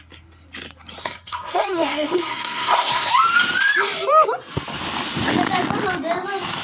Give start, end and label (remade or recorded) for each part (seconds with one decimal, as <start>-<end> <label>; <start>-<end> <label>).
0.0-1.0 recorded; 1.0-3.1 remade; 3.1-6.6 recorded